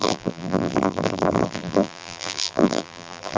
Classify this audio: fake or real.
fake